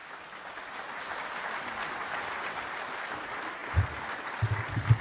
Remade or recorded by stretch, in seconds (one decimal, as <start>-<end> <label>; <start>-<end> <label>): 0.0-5.0 recorded